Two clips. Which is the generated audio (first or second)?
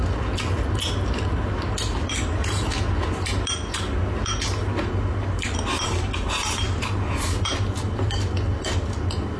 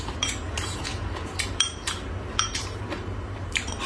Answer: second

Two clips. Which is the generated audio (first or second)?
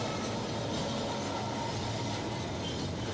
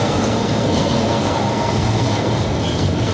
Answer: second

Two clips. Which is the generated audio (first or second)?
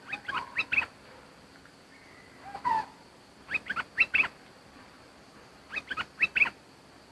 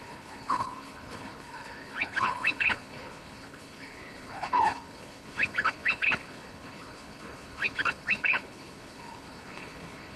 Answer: second